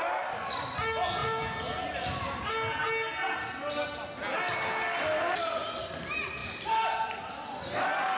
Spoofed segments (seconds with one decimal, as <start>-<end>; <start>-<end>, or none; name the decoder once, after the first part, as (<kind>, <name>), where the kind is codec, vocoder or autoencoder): none